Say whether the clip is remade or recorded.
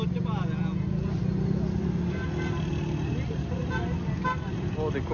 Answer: recorded